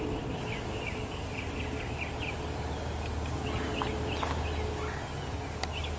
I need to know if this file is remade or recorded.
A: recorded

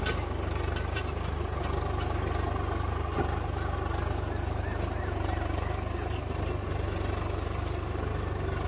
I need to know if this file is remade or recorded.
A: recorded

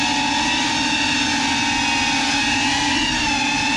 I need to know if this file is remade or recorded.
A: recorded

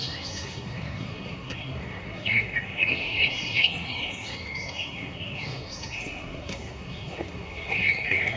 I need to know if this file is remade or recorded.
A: remade